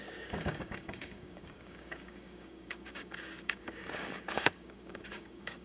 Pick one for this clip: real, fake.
fake